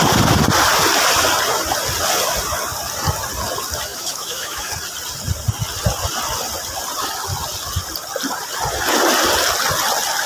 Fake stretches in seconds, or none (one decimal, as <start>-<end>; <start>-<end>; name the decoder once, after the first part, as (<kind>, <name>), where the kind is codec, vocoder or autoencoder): 3.9-4.7 (autoencoder, DAC-VAE)